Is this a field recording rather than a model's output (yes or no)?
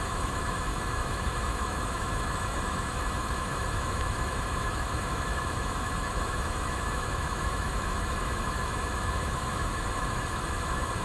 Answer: no